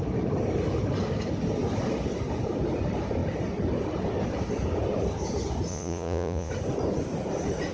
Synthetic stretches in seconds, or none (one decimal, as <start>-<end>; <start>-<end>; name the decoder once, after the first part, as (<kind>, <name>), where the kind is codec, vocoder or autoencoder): 5.7-6.5 (vocoder, Vocos)